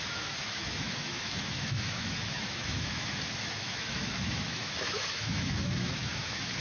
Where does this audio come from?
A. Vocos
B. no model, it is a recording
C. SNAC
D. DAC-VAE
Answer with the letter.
D